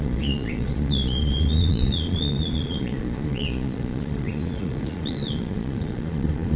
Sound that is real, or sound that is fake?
fake